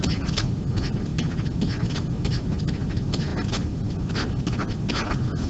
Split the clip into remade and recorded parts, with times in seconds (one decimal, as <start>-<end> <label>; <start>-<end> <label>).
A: 0.0-5.5 recorded